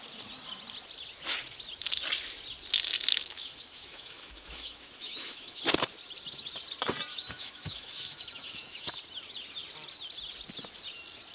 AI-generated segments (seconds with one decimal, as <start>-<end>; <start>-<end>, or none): 3.1-5.6; 7.1-9.0